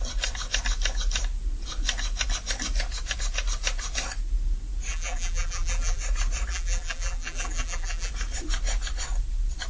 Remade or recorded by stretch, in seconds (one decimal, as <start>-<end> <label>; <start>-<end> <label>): 0.0-4.9 recorded; 4.9-6.0 remade; 6.0-6.5 recorded; 6.5-8.1 remade; 8.1-9.7 recorded

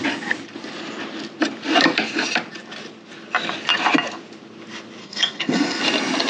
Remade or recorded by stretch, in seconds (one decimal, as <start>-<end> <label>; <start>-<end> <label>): 0.0-5.0 recorded; 5.0-5.8 remade; 5.8-6.3 recorded

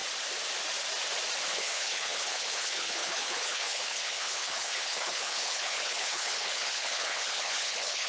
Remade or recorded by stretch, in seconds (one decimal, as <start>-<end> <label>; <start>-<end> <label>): 0.0-1.5 recorded; 1.5-8.1 remade